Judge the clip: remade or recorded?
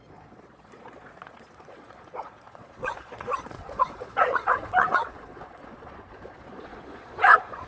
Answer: remade